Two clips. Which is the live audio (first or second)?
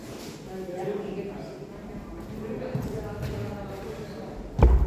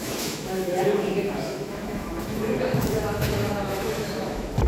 first